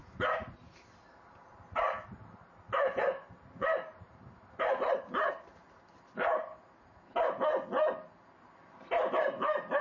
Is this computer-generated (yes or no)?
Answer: no